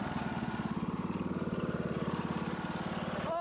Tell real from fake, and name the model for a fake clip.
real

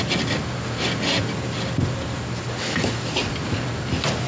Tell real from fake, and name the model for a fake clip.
real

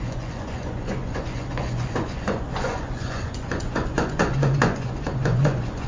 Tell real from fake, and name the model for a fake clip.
fake, vocoder, Vocos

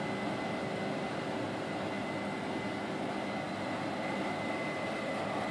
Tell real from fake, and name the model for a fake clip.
real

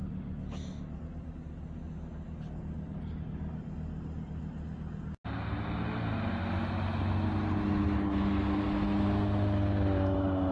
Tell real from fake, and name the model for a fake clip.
real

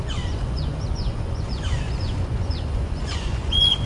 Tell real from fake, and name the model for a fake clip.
fake, vocoder, Vocos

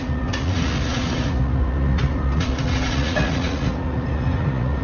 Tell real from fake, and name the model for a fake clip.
fake, vocoder, Vocos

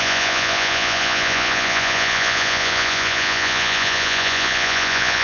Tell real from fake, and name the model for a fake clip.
fake, vocoder, Vocos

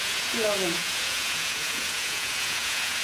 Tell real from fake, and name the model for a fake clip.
fake, vocoder, Vocos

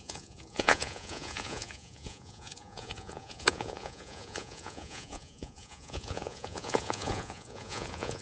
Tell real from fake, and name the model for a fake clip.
fake, vocoder, Vocos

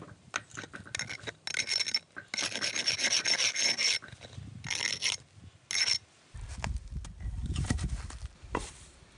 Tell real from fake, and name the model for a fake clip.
real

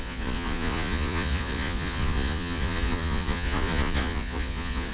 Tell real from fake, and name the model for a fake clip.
fake, vocoder, Vocos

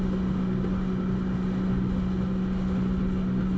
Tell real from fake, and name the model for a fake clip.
real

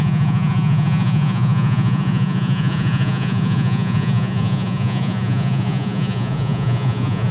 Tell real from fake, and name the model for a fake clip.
fake, vocoder, Vocos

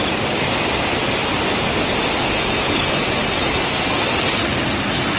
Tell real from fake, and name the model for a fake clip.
real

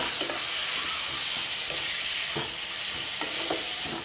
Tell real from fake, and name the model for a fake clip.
real